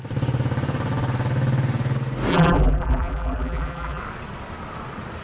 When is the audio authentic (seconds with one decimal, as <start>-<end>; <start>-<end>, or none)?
0.0-2.3; 4.0-5.2